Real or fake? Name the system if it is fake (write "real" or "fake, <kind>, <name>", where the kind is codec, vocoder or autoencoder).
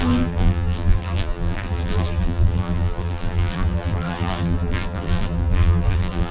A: fake, vocoder, BigVGAN v2